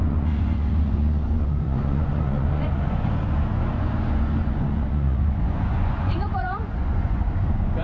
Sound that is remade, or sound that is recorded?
remade